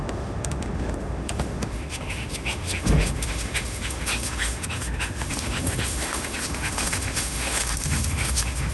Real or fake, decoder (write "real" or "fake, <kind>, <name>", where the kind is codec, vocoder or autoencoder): fake, autoencoder, DAC-VAE